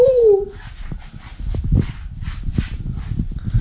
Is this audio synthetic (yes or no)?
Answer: no